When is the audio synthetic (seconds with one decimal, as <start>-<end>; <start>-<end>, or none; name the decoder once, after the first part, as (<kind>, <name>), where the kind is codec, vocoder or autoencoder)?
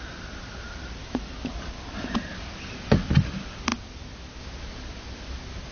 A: 1.0-1.5 (autoencoder, DAC-VAE)